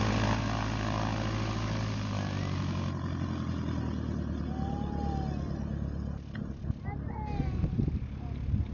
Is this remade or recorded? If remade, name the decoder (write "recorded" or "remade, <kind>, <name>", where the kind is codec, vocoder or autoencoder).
recorded